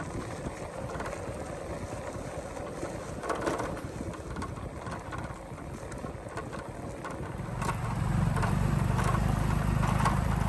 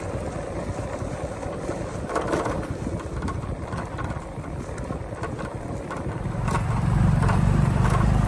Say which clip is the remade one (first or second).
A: second